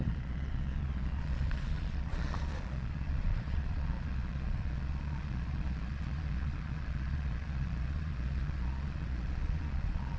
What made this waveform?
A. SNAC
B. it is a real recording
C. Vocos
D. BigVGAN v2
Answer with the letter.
C